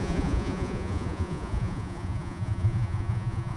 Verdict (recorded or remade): remade